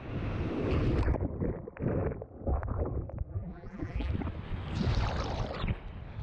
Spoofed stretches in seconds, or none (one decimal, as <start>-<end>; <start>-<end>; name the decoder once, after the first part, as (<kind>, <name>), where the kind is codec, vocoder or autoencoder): 3.3-4.1 (vocoder, BigVGAN v2)